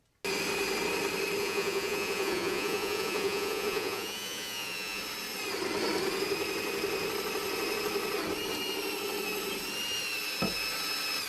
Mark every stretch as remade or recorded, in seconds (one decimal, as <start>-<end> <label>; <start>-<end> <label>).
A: 0.0-1.4 recorded; 1.4-5.0 remade; 5.0-11.3 recorded